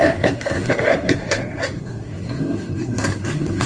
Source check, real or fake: fake